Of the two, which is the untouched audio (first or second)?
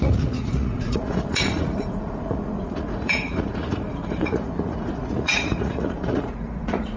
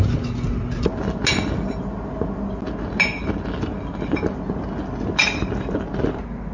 second